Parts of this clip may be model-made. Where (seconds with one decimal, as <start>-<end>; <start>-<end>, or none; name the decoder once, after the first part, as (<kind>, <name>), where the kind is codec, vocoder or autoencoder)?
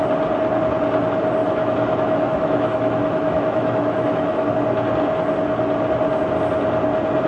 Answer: 1.4-4.5 (autoencoder, DAC-VAE)